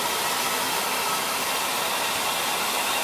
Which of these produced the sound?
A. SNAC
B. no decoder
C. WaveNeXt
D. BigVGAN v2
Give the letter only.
D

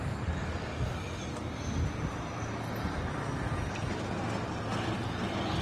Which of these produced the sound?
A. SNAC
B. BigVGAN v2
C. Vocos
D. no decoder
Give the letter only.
D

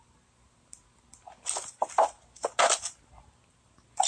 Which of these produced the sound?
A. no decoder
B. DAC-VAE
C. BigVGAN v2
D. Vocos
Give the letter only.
A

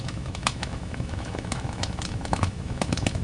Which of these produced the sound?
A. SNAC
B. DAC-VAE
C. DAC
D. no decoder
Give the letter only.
B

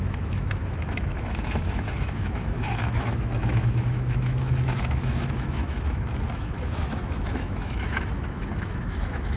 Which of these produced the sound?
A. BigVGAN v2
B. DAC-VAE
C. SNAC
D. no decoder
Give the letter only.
B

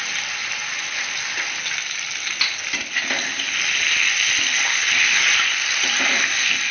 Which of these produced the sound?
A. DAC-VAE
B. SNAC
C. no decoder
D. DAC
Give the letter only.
C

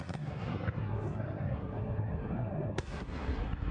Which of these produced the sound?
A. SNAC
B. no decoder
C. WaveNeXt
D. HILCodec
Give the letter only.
A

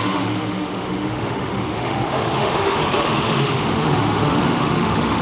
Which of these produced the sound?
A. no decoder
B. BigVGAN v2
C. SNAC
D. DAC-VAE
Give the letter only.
D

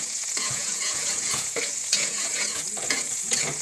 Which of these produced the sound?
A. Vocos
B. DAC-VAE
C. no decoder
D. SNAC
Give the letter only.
A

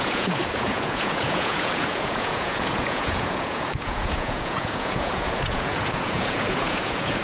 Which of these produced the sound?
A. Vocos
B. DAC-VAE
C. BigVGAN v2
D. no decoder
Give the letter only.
A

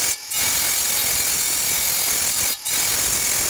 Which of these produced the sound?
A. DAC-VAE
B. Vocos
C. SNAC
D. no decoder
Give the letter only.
D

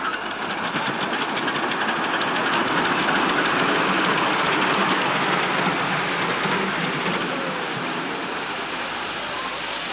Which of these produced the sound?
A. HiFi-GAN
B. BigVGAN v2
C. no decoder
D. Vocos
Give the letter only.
C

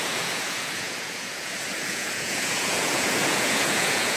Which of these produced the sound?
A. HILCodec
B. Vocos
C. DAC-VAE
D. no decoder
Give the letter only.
B